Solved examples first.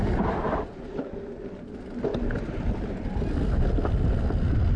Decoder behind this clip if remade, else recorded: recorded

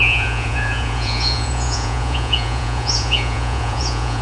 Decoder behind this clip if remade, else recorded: remade, vocoder, Vocos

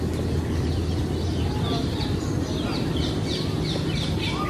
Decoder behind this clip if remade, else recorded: recorded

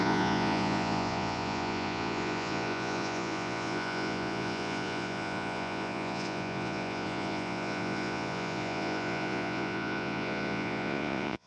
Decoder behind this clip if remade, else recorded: remade, vocoder, Vocos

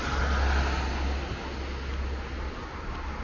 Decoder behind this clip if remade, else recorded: recorded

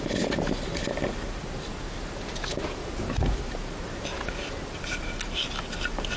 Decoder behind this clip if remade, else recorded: recorded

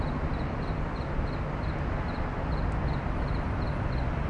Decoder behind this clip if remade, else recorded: recorded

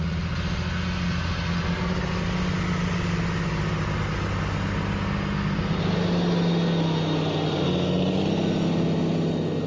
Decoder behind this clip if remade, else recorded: recorded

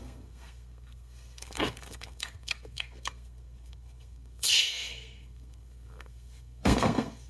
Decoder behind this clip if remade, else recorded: remade, codec, SNAC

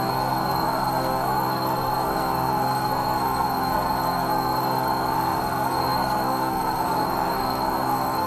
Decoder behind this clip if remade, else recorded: remade, codec, SNAC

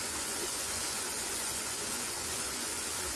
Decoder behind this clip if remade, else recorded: remade, vocoder, Vocos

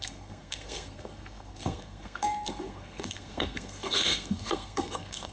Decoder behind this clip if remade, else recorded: remade, codec, SNAC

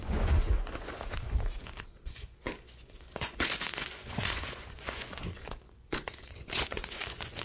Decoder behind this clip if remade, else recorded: remade, vocoder, Vocos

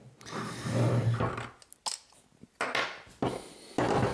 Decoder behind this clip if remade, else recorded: recorded